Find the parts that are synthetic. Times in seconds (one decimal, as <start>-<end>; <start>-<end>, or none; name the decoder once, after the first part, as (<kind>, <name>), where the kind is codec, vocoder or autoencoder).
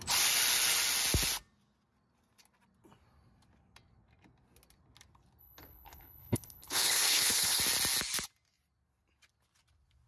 5.4-7.6 (codec, HILCodec)